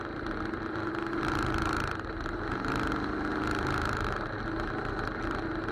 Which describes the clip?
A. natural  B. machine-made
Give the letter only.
A